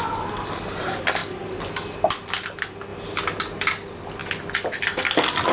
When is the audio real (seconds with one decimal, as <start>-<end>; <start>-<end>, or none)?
0.0-5.5